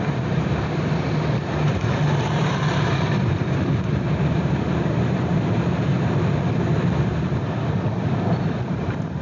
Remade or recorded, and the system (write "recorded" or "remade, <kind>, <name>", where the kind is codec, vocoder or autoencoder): recorded